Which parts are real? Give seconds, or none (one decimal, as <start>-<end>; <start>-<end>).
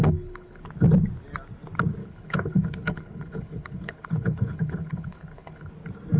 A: 0.6-2.0; 5.7-6.2